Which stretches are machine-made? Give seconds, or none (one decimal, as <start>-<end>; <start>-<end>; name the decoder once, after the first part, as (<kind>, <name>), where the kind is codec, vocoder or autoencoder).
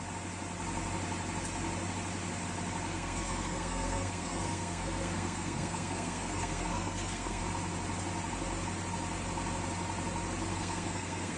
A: 2.9-7.4 (codec, SNAC); 10.5-11.4